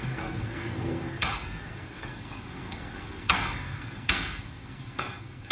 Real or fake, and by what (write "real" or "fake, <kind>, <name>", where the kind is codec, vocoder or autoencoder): fake, codec, SNAC